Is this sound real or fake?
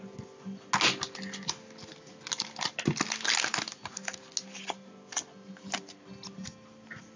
real